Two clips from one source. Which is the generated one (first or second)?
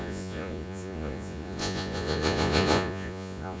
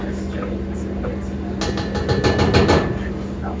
first